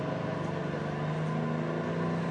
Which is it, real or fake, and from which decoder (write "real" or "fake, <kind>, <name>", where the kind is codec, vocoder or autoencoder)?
real